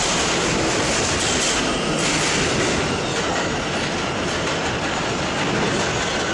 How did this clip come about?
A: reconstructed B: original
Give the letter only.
B